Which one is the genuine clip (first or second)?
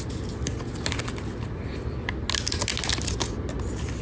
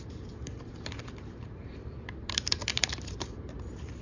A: first